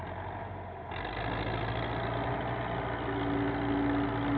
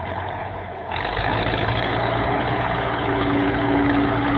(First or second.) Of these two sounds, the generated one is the second